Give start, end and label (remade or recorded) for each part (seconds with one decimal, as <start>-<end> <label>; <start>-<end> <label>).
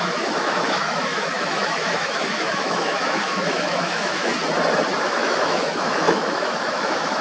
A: 0.0-4.3 remade; 4.3-5.0 recorded; 5.0-7.2 remade